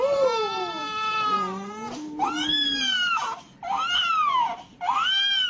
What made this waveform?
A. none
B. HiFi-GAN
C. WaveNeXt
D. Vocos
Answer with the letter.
A